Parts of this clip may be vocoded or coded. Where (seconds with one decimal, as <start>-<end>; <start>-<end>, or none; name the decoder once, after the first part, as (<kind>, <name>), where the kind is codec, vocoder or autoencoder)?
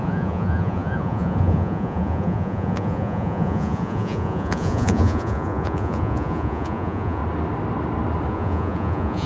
0.0-7.2 (vocoder, Vocos); 8.3-9.3